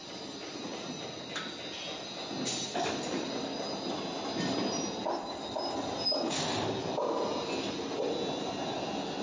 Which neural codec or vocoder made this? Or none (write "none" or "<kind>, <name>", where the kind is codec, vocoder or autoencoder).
none